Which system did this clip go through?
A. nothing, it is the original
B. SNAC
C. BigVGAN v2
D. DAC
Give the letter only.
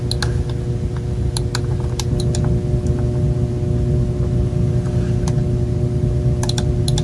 A